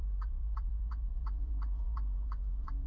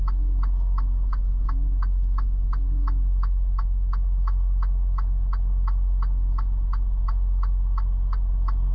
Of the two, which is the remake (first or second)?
first